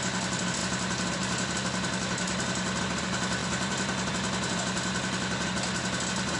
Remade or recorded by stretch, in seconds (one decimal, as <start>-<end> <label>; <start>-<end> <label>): 0.0-3.4 recorded; 3.4-4.1 remade; 4.1-6.4 recorded